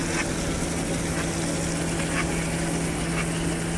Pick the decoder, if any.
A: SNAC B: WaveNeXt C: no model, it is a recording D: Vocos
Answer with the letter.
C